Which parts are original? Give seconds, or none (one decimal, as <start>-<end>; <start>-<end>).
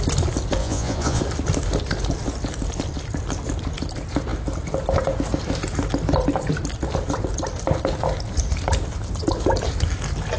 0.0-0.6; 1.2-10.4